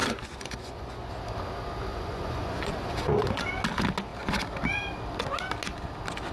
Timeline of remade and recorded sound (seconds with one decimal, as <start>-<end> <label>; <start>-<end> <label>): 0.0-1.1 remade; 1.1-1.9 recorded; 1.9-3.4 remade; 3.4-6.3 recorded